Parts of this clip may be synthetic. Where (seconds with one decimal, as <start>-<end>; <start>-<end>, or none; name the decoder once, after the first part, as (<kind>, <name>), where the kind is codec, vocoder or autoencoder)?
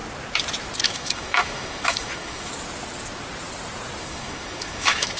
0.8-2.5 (autoencoder, DAC-VAE); 4.0-5.2